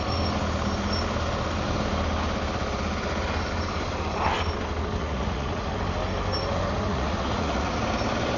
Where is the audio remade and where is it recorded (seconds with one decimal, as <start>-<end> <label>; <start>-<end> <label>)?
0.0-5.0 recorded; 5.0-5.7 remade; 5.7-6.9 recorded; 6.9-7.8 remade; 7.8-8.4 recorded